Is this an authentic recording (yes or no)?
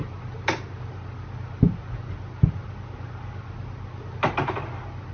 yes